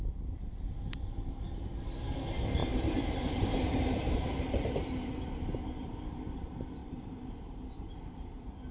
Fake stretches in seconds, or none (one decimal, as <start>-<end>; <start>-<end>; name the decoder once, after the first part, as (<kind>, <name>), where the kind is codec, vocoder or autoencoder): 2.6-5.1 (vocoder, BigVGAN v2); 6.8-8.0